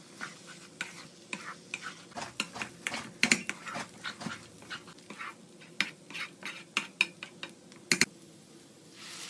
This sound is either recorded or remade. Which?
recorded